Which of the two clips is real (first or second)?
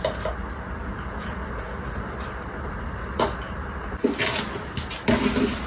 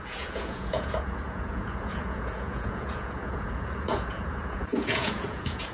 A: first